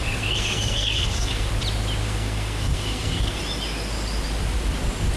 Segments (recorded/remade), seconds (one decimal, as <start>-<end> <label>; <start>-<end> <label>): 0.0-1.5 remade; 1.5-2.0 recorded; 2.0-3.4 remade; 3.4-5.2 recorded